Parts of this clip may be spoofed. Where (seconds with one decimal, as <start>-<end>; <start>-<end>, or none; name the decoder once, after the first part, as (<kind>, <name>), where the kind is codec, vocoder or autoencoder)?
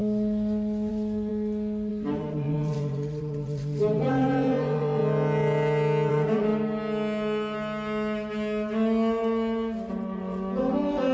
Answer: 0.9-1.3 (vocoder, Vocos); 1.9-5.0; 6.1-6.5; 9.9-11.1